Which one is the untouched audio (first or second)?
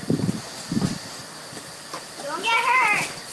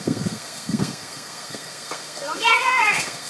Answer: first